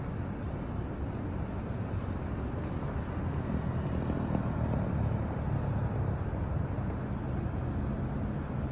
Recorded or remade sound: recorded